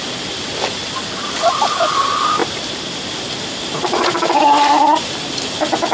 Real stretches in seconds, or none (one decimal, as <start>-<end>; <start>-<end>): 0.0-2.4; 3.1-5.9